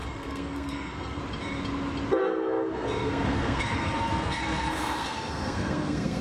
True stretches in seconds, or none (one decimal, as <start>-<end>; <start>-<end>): 1.2-2.2